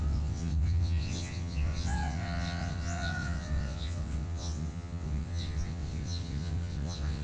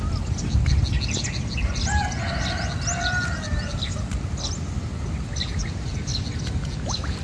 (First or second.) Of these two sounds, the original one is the second